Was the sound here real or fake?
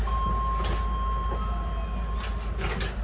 real